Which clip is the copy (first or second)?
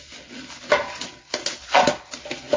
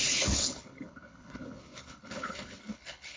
second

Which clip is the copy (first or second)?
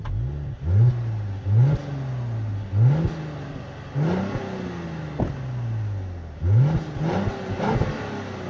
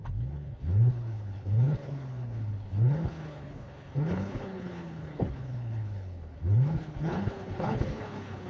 second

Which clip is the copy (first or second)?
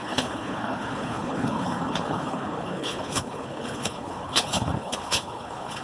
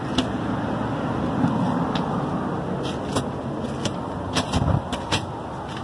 first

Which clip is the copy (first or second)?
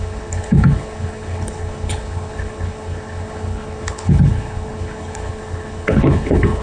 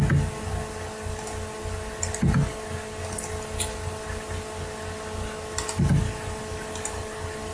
first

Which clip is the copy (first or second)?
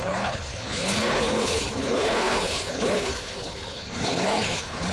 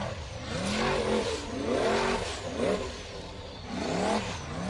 first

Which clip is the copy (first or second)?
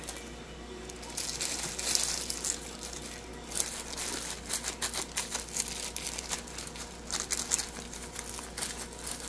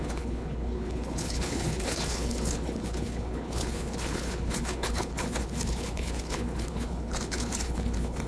second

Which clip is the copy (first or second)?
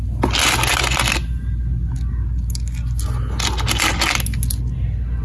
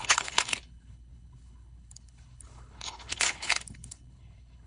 second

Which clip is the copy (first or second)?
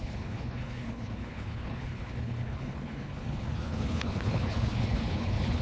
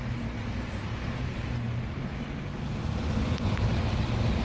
first